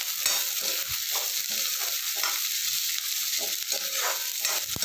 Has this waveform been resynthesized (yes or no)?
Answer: no